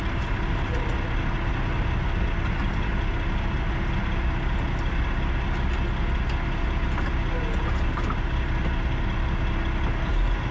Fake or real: real